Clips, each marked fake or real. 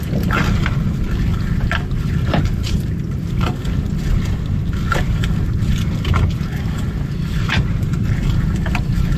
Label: real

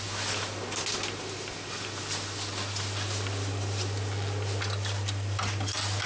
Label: real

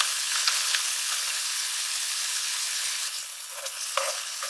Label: fake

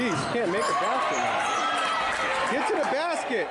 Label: real